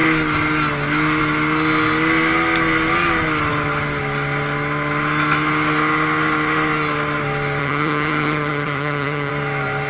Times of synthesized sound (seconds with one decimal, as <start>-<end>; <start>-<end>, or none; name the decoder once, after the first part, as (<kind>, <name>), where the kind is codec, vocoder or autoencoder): 7.6-9.3 (vocoder, HiFi-GAN)

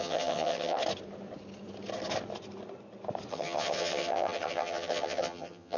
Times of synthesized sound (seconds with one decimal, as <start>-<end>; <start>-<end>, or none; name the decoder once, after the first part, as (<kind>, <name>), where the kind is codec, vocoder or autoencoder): 0.0-0.8 (vocoder, HiFi-GAN); 3.3-5.8

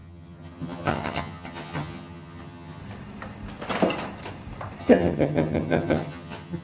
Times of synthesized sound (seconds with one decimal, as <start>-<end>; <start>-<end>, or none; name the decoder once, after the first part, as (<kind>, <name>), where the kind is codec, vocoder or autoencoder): 0.0-2.8 (vocoder, HiFi-GAN); 4.8-6.6